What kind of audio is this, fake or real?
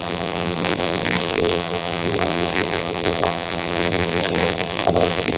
fake